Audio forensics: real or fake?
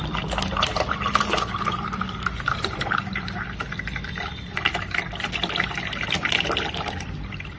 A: real